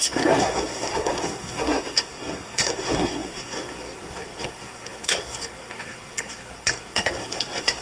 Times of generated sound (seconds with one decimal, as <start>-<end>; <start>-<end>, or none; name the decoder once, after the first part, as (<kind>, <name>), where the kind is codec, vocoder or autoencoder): 0.0-7.8 (codec, SNAC)